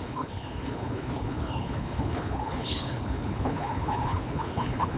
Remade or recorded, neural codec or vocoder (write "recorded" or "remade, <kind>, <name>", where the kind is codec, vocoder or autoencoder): remade, codec, HILCodec